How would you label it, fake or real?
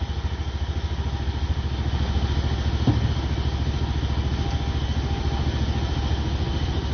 real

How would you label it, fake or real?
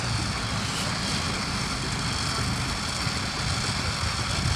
real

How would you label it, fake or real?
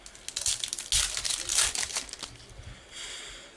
real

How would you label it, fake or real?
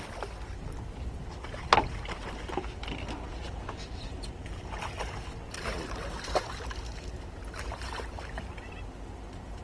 real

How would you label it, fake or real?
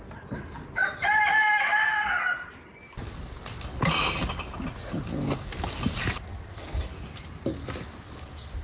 real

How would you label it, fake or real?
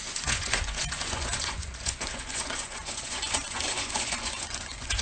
fake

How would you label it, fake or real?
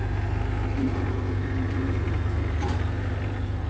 real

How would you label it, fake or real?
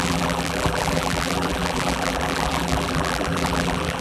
fake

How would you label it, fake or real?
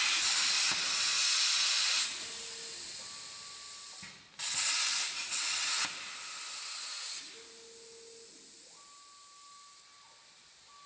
real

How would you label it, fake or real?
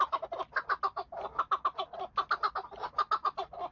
real